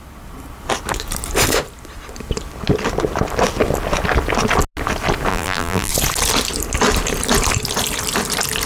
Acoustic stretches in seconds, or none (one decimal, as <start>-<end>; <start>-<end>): 0.0-5.3; 5.9-8.7